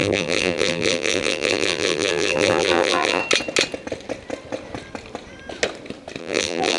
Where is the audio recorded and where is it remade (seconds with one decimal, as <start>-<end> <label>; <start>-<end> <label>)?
0.0-3.2 remade; 3.2-6.2 recorded; 6.2-6.8 remade